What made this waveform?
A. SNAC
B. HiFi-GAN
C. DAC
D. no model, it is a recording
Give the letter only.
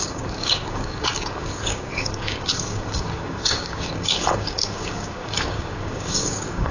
C